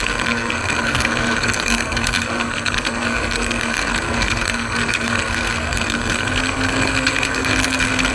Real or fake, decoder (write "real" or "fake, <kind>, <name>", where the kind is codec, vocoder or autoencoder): fake, codec, SNAC